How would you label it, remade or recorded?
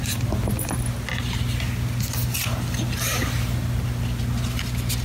recorded